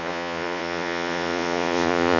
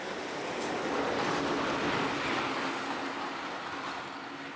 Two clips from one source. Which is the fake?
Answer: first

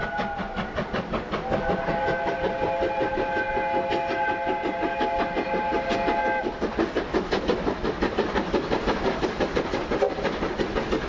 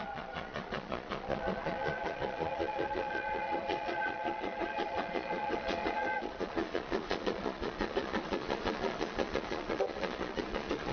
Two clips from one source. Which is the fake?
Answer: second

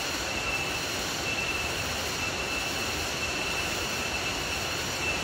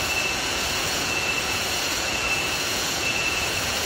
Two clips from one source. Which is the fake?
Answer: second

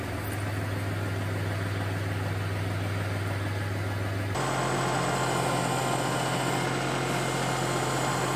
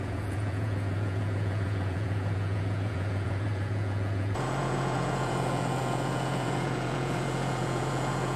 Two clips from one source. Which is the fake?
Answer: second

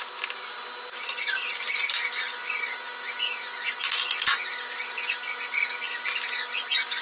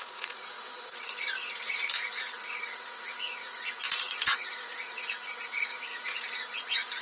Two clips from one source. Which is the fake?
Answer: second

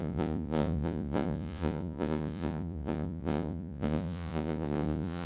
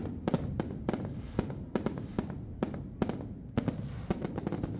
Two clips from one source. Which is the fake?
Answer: first